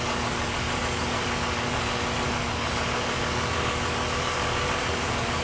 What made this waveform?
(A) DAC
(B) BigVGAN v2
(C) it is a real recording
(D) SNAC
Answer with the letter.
A